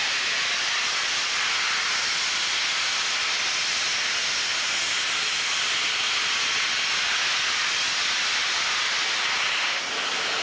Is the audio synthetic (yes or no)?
no